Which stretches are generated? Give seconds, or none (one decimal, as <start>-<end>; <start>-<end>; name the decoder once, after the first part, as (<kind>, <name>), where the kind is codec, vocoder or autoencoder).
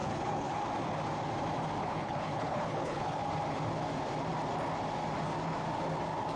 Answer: 0.0-0.6 (codec, HILCodec); 1.8-3.2